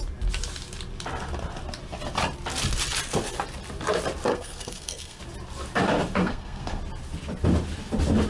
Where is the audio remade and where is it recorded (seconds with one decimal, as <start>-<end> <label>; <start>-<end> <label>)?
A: 0.0-4.3 recorded; 4.3-5.2 remade; 5.2-6.2 recorded; 6.2-6.8 remade; 6.8-8.3 recorded